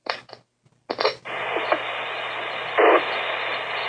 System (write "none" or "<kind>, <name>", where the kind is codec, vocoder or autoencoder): none